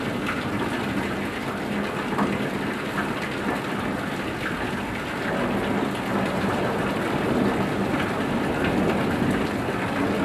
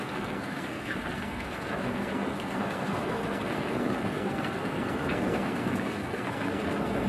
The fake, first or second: second